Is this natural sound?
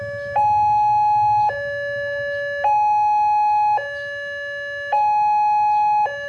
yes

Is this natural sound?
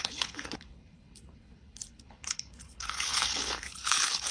no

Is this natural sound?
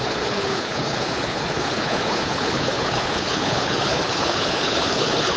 no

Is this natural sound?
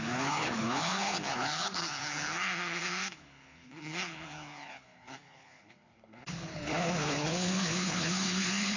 no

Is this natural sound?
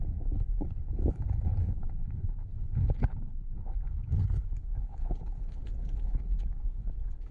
no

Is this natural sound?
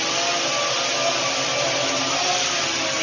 yes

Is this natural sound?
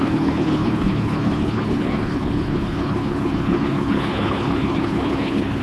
no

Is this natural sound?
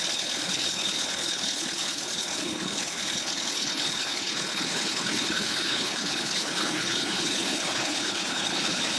no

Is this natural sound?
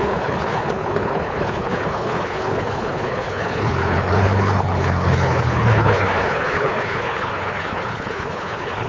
no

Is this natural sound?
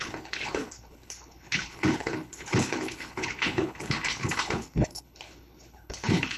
no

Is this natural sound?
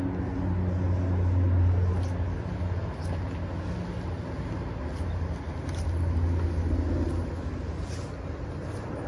yes